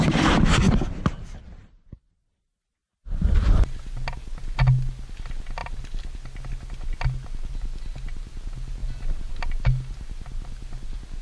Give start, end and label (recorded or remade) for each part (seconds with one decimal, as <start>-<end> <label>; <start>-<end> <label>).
0.0-11.2 recorded

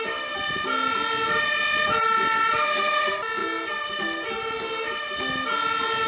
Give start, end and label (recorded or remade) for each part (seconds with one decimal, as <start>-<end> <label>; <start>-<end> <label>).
0.0-6.1 recorded